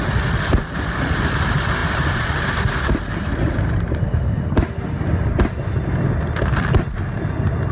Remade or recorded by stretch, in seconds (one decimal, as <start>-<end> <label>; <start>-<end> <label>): 0.0-1.8 recorded; 1.8-4.5 remade; 4.5-7.7 recorded